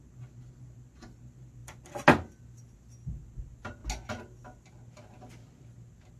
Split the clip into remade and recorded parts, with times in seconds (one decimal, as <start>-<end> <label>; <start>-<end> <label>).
0.0-1.6 recorded; 1.6-2.3 remade; 2.3-6.2 recorded